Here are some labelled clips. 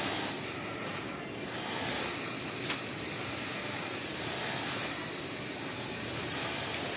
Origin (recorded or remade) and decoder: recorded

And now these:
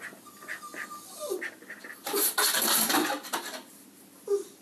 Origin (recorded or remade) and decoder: recorded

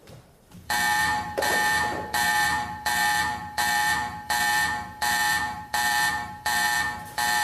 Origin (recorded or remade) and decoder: remade, vocoder, BigVGAN v2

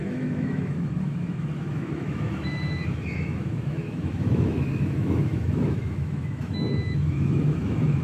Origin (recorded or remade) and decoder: remade, autoencoder, DAC-VAE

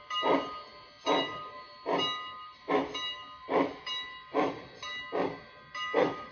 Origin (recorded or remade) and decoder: recorded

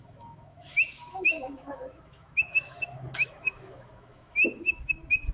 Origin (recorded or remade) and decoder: remade, autoencoder, DAC-VAE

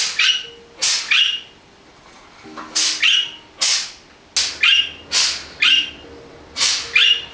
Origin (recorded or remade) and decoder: recorded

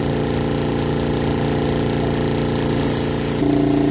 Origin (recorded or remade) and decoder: recorded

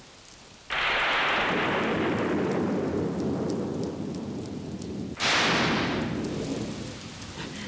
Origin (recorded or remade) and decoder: recorded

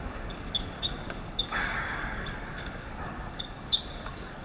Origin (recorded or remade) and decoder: remade, codec, DAC